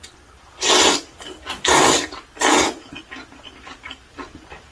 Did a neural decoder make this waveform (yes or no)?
no